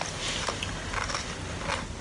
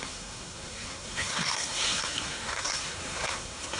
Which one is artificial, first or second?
second